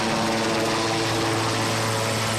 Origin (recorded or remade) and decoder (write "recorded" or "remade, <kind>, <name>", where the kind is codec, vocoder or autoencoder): recorded